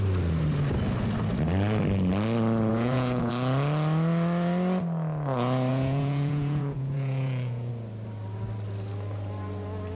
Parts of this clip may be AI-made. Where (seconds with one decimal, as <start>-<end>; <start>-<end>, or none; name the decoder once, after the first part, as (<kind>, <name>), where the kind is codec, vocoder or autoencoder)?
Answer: 2.7-3.3 (vocoder, Vocos); 5.7-7.7